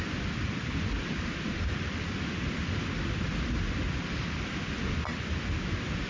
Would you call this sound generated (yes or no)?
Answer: no